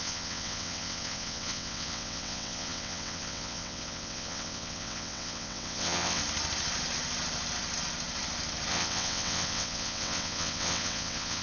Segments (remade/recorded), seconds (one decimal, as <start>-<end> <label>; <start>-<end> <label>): 0.0-6.2 remade; 6.2-8.7 recorded; 8.7-11.4 remade